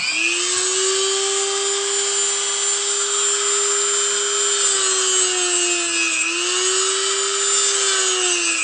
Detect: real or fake real